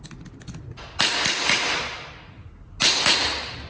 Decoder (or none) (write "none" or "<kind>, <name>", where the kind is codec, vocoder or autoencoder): none